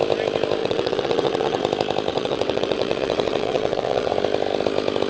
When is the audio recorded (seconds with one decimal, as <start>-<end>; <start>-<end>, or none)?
0.0-0.6; 1.6-2.1; 4.1-5.1